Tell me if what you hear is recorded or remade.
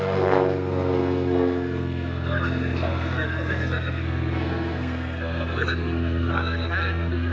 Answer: remade